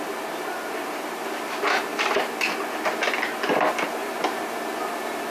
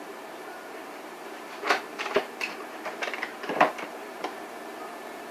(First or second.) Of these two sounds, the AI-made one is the second